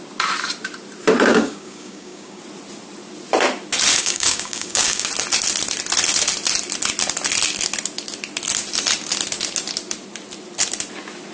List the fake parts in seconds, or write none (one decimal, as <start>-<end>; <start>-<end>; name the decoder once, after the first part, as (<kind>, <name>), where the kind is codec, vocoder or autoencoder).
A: 1.3-2.4 (codec, DAC); 3.9-5.1